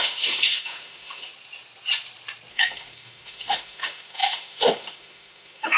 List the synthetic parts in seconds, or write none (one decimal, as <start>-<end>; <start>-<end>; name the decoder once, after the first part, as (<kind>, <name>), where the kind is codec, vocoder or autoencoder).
0.0-1.3 (autoencoder, DAC-VAE); 2.5-5.8